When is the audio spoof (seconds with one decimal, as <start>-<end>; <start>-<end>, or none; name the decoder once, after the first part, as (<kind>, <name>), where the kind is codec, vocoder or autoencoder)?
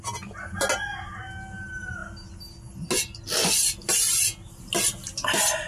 none